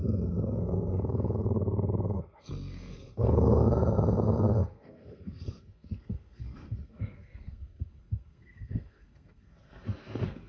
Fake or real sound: fake